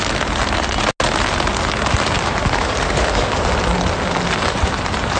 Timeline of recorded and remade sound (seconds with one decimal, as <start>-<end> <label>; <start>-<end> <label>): 0.0-2.4 recorded; 2.4-3.5 remade; 3.5-5.2 recorded